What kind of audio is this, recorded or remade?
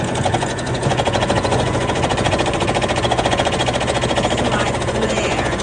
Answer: remade